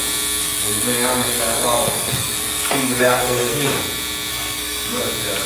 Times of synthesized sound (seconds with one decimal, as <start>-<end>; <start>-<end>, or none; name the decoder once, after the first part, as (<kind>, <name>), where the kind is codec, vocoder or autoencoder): 0.4-3.7 (codec, SNAC); 4.3-5.0